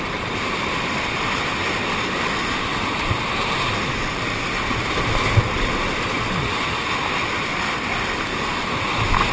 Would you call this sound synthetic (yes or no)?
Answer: no